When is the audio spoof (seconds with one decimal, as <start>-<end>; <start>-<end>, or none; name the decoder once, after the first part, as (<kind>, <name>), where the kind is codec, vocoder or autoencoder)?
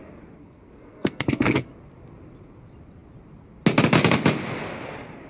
0.4-1.7 (codec, SNAC)